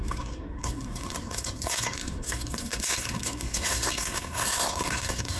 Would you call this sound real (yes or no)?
no